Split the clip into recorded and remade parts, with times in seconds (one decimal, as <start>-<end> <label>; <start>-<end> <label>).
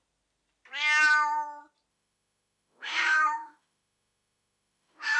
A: 0.0-1.9 recorded; 1.9-5.2 remade